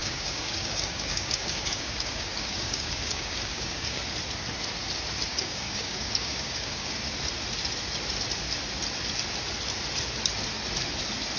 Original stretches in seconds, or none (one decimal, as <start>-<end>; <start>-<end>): 4.0-5.3; 7.0-11.4